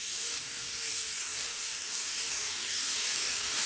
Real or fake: fake